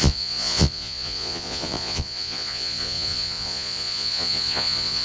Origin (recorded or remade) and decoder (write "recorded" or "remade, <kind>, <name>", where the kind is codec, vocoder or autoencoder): remade, vocoder, Vocos